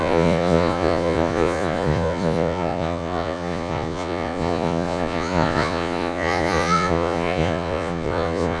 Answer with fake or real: fake